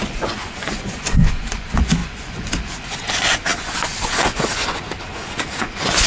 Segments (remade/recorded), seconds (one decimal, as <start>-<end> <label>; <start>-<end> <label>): 0.0-6.1 remade